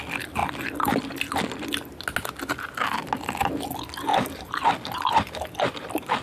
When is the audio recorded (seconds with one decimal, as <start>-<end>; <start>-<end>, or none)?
0.0-6.2